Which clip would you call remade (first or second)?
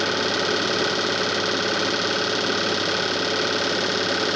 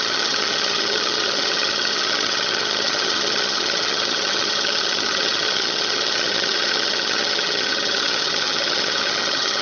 second